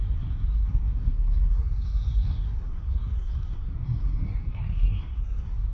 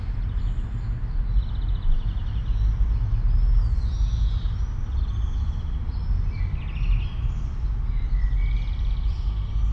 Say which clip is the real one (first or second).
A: second